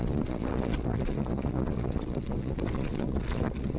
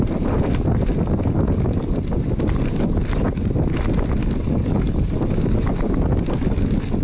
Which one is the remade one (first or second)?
first